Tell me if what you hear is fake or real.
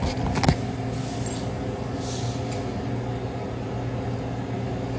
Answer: real